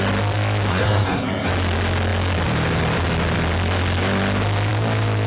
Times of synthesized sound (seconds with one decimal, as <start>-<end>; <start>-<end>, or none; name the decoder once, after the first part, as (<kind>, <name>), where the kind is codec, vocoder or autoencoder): 0.7-1.5 (codec, SNAC)